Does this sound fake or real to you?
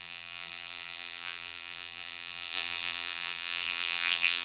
fake